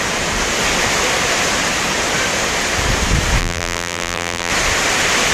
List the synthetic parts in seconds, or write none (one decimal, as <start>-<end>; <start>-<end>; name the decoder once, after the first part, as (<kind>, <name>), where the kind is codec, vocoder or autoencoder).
3.4-4.5 (vocoder, BigVGAN v2)